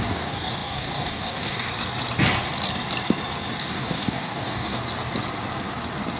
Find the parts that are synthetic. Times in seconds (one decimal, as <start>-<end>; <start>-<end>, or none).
0.0-1.7; 3.6-4.8